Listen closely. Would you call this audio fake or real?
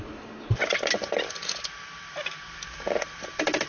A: real